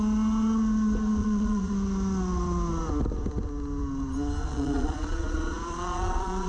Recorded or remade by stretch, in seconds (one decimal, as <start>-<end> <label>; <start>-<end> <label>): 0.0-1.2 recorded; 1.2-1.7 remade; 1.7-4.4 recorded; 4.4-6.5 remade